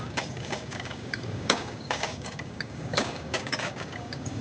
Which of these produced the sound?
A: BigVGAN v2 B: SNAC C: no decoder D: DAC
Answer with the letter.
D